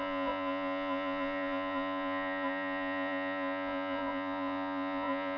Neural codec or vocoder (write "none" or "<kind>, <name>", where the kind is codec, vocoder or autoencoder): vocoder, Vocos